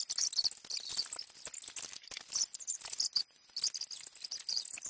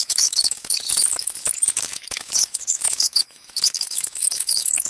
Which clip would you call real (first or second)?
first